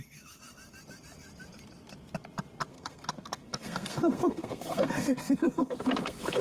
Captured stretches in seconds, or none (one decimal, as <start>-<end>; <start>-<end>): 0.0-2.7